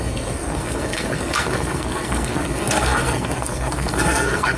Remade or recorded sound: remade